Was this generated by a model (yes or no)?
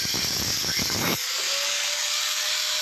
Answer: yes